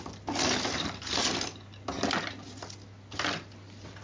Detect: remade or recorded recorded